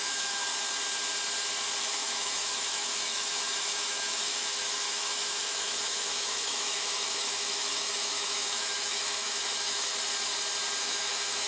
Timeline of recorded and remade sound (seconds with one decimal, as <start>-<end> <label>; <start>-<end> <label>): 0.0-0.5 remade; 0.5-1.8 recorded; 1.8-9.9 remade; 9.9-10.8 recorded; 10.8-11.5 remade